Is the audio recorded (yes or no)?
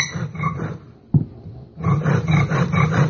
yes